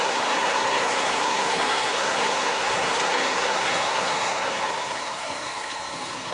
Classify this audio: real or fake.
fake